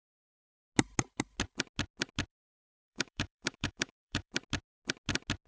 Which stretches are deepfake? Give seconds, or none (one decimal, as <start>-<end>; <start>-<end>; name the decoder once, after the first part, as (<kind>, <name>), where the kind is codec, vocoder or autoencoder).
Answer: 2.3-4.3 (autoencoder, DAC-VAE)